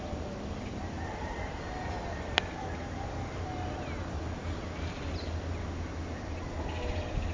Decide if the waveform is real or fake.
real